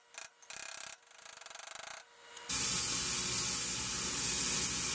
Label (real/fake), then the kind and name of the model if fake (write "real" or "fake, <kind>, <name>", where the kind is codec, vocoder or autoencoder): real